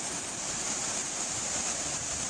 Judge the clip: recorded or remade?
remade